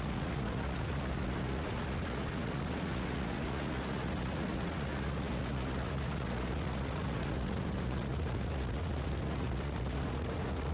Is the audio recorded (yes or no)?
no